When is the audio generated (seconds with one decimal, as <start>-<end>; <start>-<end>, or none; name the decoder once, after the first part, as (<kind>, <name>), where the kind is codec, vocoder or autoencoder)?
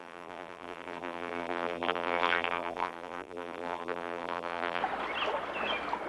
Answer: 0.0-4.8 (vocoder, BigVGAN v2)